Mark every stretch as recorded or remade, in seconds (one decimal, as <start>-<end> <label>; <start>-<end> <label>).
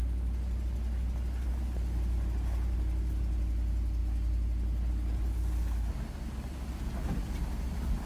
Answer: 0.0-8.1 recorded